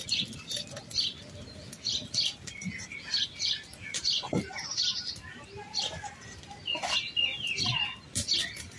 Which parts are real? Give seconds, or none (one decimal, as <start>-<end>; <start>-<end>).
0.0-8.8